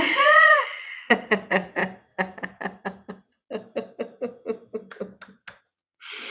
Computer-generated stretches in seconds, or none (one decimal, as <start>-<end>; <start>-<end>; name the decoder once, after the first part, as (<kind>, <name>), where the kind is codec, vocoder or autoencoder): 0.0-1.8 (vocoder, Vocos); 5.6-6.3